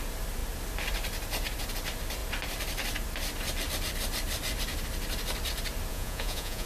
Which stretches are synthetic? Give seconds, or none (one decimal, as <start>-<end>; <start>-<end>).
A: 5.9-6.7